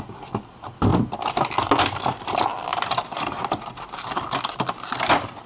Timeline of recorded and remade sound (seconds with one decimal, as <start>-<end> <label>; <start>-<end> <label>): 0.0-5.5 recorded